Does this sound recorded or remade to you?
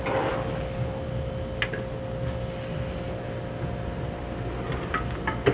recorded